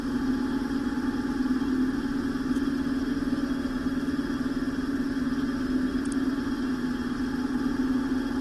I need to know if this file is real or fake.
real